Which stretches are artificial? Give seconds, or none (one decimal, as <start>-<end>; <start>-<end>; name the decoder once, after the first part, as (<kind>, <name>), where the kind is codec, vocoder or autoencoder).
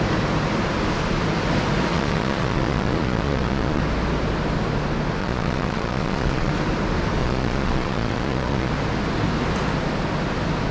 1.9-3.8 (vocoder, Vocos); 5.2-6.5; 7.2-8.7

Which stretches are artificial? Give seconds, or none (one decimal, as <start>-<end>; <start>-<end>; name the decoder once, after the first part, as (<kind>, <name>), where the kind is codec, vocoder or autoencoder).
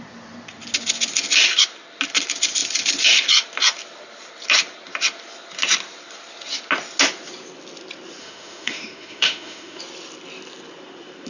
8.2-9.8 (autoencoder, DAC-VAE)